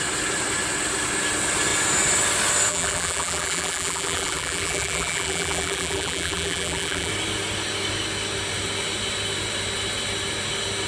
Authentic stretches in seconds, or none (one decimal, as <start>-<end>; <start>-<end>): 0.0-2.7; 7.1-10.9